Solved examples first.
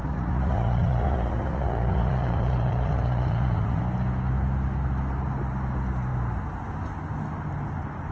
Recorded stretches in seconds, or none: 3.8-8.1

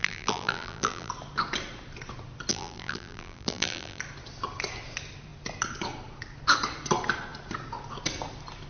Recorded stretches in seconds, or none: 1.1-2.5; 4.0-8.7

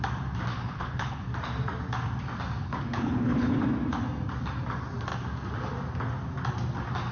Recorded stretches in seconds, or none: 0.0-0.5; 1.3-2.6; 3.6-7.1

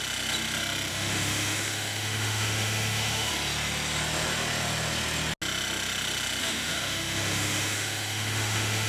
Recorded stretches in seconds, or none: 0.0-0.9; 3.3-6.4